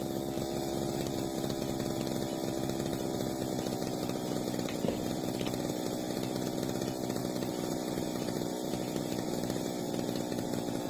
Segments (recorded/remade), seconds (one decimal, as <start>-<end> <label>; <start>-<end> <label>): 0.0-2.9 recorded; 2.9-5.7 remade; 5.7-7.2 recorded; 7.2-8.7 remade; 8.7-10.9 recorded

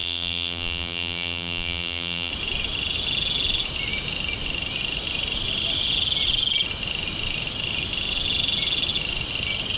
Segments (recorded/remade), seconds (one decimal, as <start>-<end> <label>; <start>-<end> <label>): 0.0-2.3 remade; 2.3-9.8 recorded

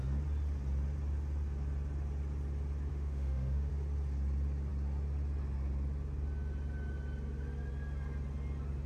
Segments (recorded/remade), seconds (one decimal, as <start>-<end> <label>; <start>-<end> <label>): 0.0-2.9 recorded; 2.9-3.7 remade; 3.7-8.9 recorded

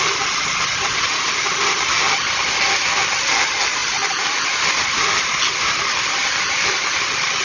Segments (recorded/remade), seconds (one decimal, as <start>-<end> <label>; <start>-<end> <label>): 0.0-7.4 recorded

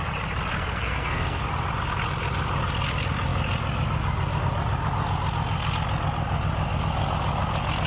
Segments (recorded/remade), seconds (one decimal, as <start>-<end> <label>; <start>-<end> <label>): 0.0-0.5 recorded; 0.5-1.4 remade; 1.4-7.9 recorded